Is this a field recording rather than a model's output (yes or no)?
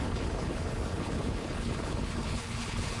no